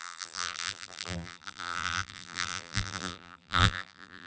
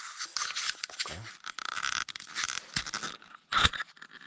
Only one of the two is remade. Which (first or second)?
first